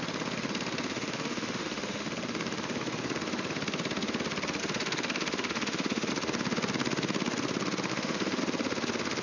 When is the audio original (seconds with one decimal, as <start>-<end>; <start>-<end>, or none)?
0.0-0.9; 2.0-4.6; 6.1-7.9; 8.4-9.2